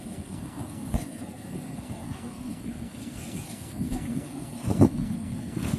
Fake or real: fake